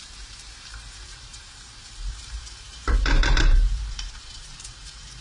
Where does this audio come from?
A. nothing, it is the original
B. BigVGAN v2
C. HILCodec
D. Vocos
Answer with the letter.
B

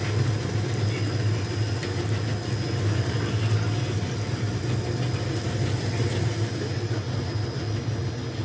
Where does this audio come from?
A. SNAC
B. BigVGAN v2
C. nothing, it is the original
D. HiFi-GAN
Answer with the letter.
C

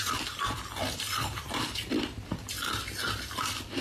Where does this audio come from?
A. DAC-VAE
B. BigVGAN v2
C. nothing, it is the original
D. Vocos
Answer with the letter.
B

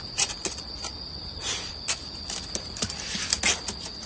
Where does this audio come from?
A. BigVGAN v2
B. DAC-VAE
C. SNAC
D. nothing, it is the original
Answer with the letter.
A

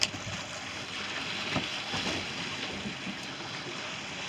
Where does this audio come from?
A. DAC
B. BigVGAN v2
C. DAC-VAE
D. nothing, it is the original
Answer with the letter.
D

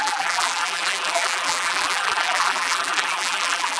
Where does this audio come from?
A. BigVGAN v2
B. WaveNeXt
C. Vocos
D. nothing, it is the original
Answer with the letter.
A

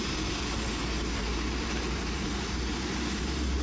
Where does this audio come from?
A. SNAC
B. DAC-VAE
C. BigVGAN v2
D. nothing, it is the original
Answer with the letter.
C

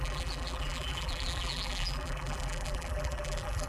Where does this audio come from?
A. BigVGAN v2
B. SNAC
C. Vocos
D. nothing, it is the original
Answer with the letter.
A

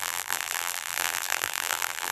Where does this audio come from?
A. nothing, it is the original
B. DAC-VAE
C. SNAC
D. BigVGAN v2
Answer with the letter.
D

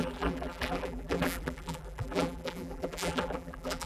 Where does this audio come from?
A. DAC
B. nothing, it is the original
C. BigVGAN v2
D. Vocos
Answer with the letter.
C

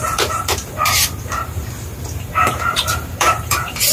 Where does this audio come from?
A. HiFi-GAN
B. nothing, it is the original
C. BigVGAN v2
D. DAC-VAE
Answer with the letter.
C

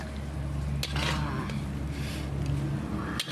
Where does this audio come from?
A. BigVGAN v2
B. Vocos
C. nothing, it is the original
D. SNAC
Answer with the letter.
C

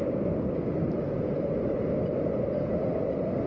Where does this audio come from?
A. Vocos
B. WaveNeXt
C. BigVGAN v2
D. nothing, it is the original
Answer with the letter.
C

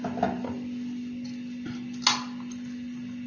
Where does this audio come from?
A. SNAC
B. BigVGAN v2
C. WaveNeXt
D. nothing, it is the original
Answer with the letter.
D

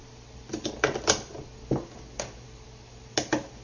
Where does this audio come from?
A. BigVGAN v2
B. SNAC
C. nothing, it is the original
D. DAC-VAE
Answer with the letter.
A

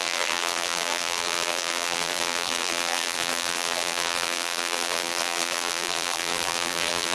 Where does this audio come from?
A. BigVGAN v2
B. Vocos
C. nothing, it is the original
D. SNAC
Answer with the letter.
A